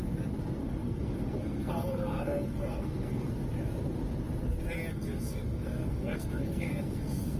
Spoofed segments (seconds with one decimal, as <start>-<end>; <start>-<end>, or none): 0.6-3.3; 4.9-7.4